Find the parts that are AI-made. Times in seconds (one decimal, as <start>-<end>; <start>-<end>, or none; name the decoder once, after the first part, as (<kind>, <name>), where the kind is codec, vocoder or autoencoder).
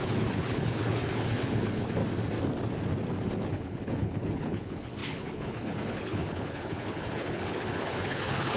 0.0-2.0 (codec, HILCodec); 3.5-8.6